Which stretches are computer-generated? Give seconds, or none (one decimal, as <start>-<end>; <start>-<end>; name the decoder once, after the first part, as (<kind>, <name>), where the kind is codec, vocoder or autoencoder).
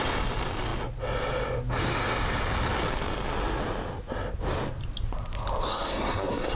5.7-6.6 (codec, SNAC)